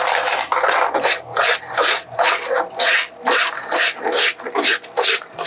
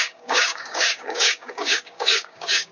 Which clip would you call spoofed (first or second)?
second